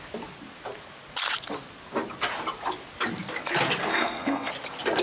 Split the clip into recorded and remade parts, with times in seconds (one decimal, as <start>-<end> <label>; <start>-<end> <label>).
0.0-3.9 recorded; 3.9-4.5 remade; 4.5-5.0 recorded